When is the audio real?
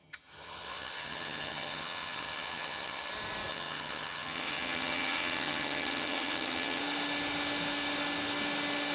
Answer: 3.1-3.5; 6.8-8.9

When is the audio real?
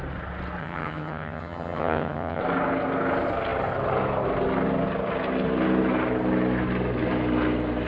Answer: 0.0-0.6; 2.4-7.9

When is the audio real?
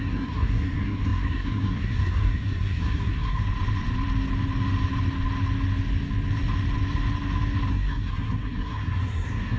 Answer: 3.4-7.7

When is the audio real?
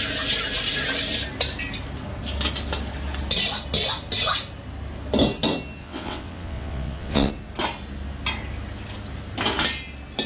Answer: 0.0-5.8; 7.3-10.3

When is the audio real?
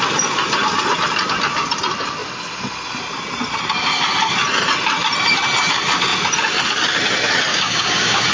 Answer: 0.0-7.5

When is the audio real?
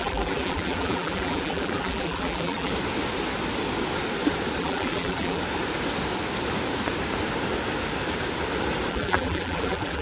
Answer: 2.7-4.6; 5.4-8.9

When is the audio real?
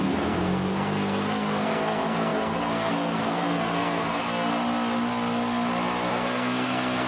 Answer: 4.5-6.1